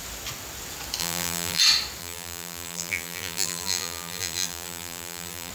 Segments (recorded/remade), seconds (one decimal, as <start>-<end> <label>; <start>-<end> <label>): 0.0-1.0 recorded; 1.0-1.6 remade; 1.6-2.0 recorded; 2.0-5.5 remade